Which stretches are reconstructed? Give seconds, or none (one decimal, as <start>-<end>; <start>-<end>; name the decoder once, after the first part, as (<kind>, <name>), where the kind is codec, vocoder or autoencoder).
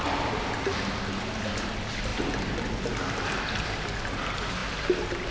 none